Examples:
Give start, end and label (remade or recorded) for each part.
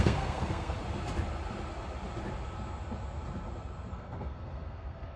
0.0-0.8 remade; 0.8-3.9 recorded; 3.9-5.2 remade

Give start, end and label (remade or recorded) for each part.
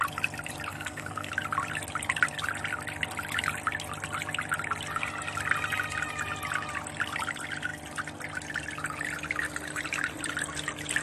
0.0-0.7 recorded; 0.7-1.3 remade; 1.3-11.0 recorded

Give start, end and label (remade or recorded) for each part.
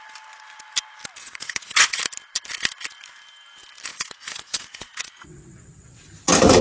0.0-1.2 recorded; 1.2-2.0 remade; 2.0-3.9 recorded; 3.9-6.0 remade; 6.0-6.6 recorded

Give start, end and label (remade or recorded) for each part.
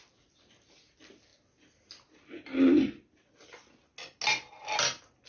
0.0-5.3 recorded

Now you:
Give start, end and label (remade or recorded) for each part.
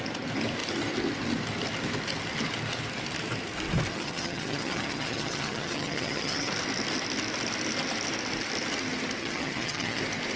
0.0-3.9 recorded; 3.9-6.5 remade; 6.5-9.2 recorded; 9.2-10.0 remade; 10.0-10.4 recorded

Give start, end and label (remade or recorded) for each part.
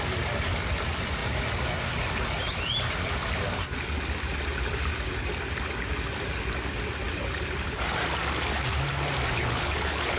0.0-9.4 recorded; 9.4-10.2 remade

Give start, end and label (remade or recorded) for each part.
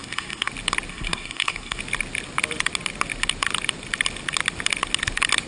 0.0-0.5 remade; 0.5-0.9 recorded; 0.9-1.8 remade; 1.8-5.5 recorded